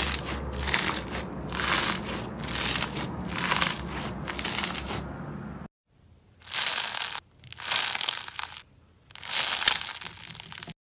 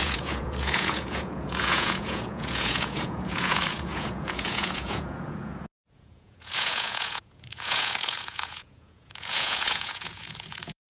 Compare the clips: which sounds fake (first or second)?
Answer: second